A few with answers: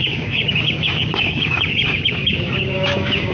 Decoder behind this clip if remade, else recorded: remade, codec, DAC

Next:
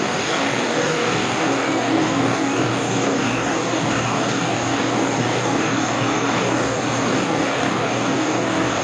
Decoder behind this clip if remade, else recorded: remade, codec, DAC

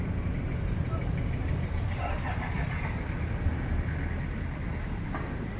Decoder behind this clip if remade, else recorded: recorded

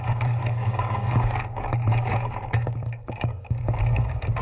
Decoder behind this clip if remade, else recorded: remade, codec, DAC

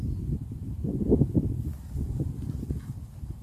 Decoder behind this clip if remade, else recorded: recorded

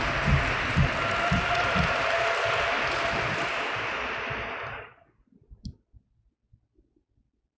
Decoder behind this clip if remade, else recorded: recorded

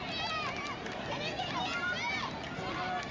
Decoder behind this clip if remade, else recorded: recorded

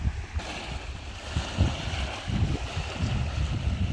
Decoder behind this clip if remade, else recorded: recorded